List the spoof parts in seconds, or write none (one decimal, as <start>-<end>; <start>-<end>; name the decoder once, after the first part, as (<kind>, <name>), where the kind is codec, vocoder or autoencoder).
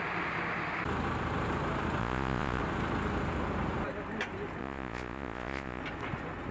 2.0-2.6 (vocoder, Vocos); 4.6-5.8